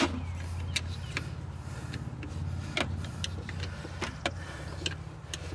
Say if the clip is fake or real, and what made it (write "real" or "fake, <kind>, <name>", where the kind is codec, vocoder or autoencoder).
real